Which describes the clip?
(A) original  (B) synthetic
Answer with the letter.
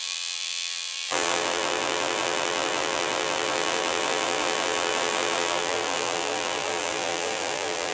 B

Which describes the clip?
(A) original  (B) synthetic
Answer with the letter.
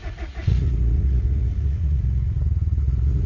B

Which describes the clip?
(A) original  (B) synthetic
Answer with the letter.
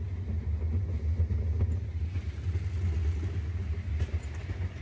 A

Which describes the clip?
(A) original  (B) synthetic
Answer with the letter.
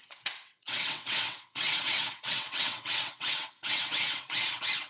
B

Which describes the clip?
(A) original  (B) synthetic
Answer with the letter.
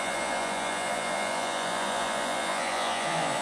B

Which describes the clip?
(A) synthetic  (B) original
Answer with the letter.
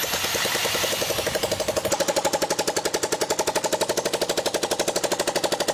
B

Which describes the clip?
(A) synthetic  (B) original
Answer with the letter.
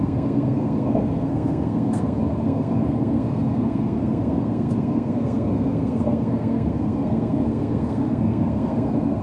A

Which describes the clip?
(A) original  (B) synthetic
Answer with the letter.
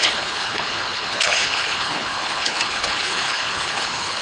B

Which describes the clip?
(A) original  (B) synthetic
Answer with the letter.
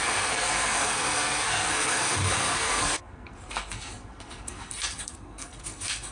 B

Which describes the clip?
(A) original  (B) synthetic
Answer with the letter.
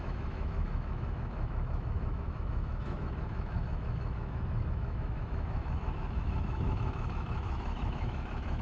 B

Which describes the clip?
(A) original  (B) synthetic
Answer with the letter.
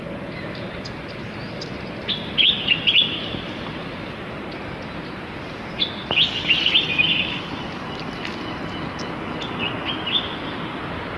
A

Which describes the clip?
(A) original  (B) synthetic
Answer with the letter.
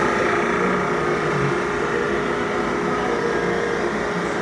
A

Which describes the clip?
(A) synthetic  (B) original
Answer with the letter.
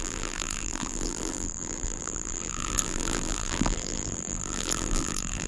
A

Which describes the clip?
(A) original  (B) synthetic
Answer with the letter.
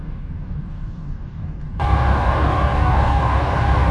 B